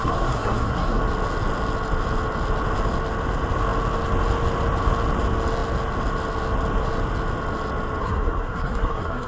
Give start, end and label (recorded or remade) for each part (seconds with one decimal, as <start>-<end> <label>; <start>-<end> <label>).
0.0-1.0 remade; 1.0-8.0 recorded; 8.0-9.3 remade